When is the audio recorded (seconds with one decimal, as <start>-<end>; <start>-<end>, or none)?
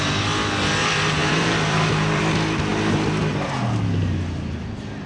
0.0-1.2; 2.2-5.1